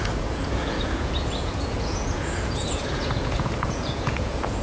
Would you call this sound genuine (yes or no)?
no